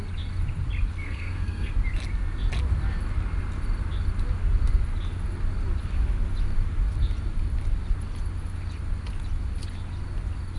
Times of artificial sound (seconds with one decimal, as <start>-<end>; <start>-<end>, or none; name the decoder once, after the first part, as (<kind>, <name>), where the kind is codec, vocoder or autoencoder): 1.0-1.7 (codec, SNAC)